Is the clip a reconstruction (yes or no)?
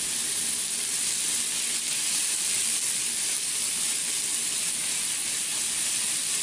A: no